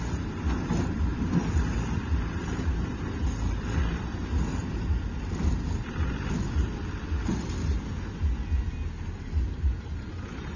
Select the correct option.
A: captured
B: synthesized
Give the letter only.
A